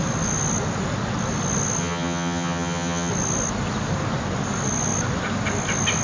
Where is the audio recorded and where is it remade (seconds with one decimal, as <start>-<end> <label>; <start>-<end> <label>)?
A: 0.0-1.8 recorded; 1.8-3.1 remade; 3.1-6.0 recorded